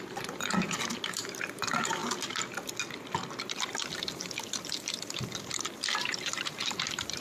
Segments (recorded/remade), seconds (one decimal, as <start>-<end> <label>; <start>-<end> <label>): 0.0-2.0 remade; 2.0-6.0 recorded; 6.0-7.2 remade